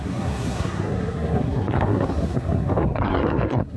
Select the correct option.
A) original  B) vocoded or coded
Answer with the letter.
B